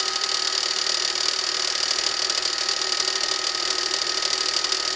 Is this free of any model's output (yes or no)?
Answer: yes